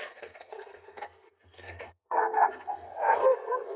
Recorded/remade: remade